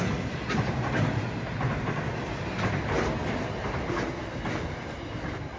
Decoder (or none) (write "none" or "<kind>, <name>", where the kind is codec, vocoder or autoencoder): none